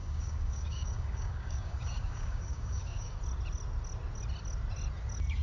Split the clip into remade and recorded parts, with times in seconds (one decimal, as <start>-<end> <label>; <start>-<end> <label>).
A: 0.0-3.2 remade; 3.2-5.4 recorded

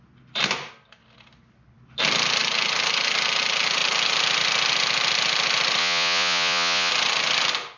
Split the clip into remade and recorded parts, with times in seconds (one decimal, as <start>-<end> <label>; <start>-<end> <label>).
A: 0.0-5.8 recorded; 5.8-6.9 remade; 6.9-7.8 recorded

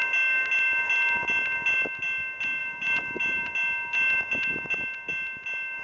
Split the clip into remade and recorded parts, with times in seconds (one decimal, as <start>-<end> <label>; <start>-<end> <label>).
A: 0.0-2.6 recorded; 2.6-3.5 remade; 3.5-5.8 recorded